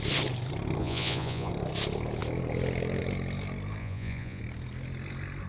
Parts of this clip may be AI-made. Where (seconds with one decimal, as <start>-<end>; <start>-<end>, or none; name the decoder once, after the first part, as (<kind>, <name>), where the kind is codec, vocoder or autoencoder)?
0.8-1.5 (vocoder, Vocos); 3.8-4.4